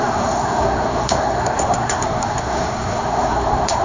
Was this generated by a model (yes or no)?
yes